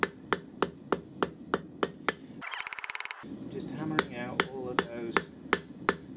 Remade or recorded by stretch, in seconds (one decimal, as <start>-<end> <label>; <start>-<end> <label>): 0.0-6.2 recorded